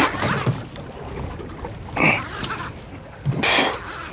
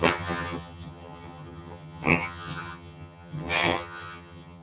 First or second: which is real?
first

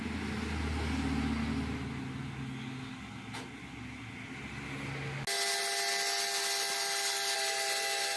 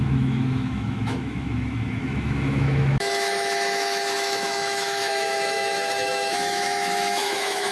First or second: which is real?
first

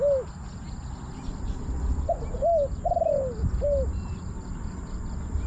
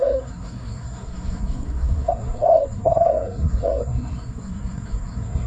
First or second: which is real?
first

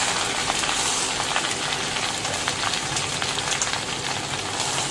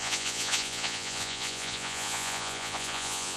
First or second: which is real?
first